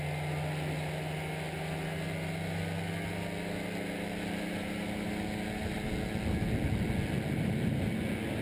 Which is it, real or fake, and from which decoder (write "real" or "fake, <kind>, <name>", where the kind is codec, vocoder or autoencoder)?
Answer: real